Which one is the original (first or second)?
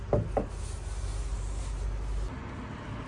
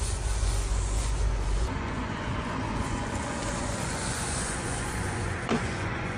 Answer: first